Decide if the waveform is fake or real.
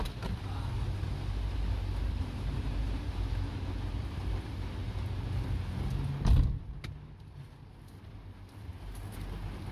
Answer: real